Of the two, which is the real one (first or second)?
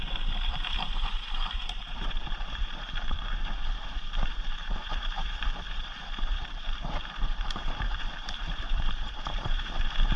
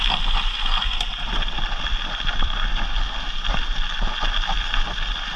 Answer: second